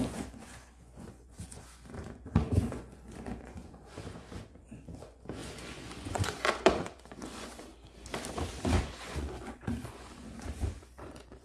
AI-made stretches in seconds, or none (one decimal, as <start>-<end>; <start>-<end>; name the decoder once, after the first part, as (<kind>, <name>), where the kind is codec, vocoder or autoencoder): 0.0-7.7 (vocoder, Vocos); 8.8-11.4